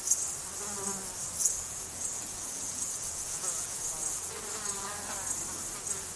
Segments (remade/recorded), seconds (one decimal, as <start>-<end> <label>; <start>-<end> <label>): 0.0-1.4 recorded; 1.4-4.3 remade; 4.3-6.2 recorded